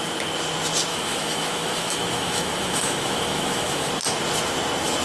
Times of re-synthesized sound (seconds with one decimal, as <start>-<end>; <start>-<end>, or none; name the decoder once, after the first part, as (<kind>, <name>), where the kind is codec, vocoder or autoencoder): 0.9-3.9 (autoencoder, DAC-VAE)